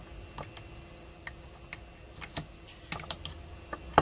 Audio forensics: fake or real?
real